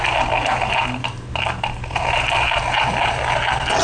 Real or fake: real